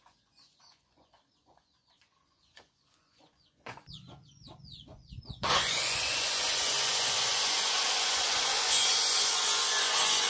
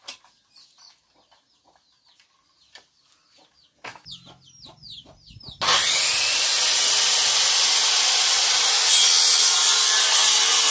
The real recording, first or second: second